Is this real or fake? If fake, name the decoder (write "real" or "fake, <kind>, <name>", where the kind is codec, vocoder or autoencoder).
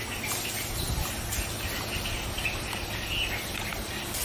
real